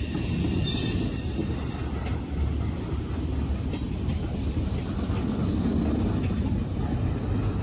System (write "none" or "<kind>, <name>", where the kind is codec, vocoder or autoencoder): none